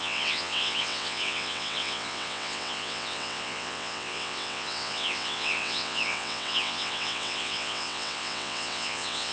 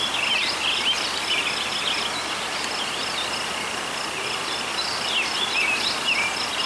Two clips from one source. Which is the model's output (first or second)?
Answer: first